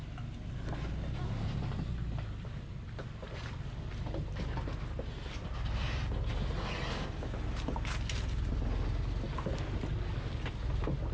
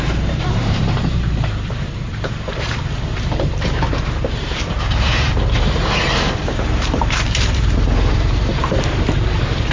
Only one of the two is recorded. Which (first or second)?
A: first